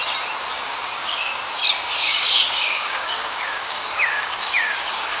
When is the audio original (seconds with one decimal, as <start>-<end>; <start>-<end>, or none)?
0.0-0.5; 1.4-2.0